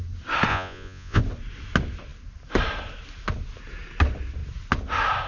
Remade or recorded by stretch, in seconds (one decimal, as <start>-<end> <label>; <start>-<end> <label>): 0.0-0.5 recorded; 0.5-1.2 remade; 1.2-5.3 recorded

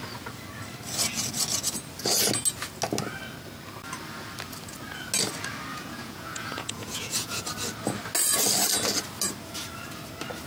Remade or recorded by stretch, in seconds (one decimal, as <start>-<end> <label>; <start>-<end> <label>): 0.0-5.7 recorded; 5.7-7.4 remade; 7.4-10.5 recorded

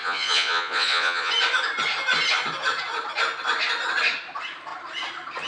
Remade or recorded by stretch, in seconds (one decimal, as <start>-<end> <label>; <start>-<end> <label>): 0.0-1.3 remade; 1.3-5.5 recorded

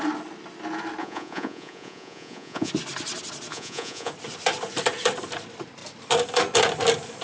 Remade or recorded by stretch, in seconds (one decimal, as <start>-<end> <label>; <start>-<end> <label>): 0.0-1.0 recorded; 1.0-2.7 remade; 2.7-3.5 recorded; 3.5-4.1 remade; 4.1-7.2 recorded

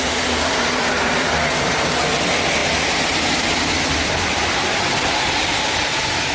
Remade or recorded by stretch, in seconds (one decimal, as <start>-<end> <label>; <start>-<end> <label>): 0.0-6.3 recorded

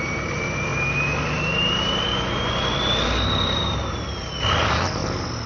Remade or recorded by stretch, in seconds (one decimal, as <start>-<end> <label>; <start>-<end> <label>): 0.0-2.1 recorded; 2.1-2.9 remade; 2.9-5.5 recorded

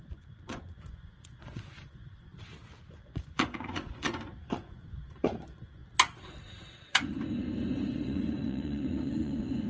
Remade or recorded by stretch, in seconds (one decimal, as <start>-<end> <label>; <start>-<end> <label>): 0.0-2.3 remade; 2.3-2.9 recorded; 2.9-5.8 remade; 5.8-7.9 recorded; 7.9-9.7 remade

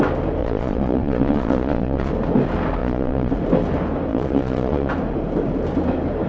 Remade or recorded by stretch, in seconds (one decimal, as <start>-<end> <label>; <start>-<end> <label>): 0.0-0.4 recorded; 0.4-2.1 remade; 2.1-2.8 recorded; 2.8-3.3 remade; 3.3-4.1 recorded; 4.1-4.9 remade; 4.9-6.3 recorded